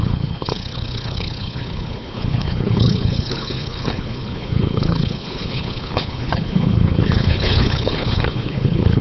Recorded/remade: remade